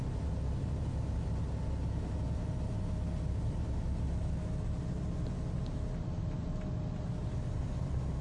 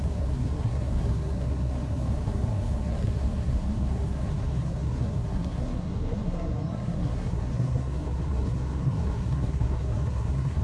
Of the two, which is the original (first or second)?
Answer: first